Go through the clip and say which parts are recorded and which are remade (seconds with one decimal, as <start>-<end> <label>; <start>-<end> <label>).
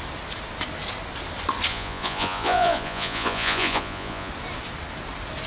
0.0-1.7 recorded; 1.7-4.3 remade; 4.3-5.5 recorded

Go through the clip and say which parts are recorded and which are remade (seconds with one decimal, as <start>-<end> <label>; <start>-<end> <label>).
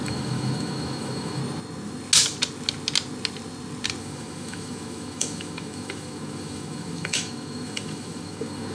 0.0-1.4 remade; 1.4-4.0 recorded; 4.0-8.7 remade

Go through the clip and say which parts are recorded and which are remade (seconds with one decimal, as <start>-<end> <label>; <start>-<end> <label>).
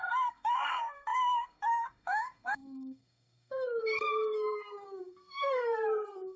0.0-6.4 remade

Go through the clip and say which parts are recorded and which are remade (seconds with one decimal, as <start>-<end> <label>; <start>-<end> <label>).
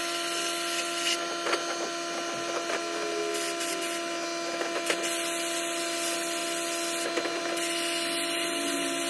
0.0-9.1 recorded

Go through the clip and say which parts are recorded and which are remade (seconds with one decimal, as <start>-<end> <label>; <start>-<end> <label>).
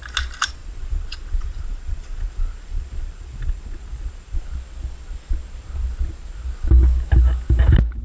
0.0-0.6 recorded; 0.6-4.4 remade; 4.4-8.0 recorded